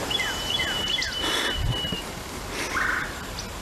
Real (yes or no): yes